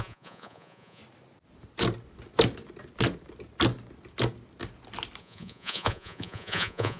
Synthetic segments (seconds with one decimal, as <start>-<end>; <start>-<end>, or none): 0.0-1.0; 5.2-7.0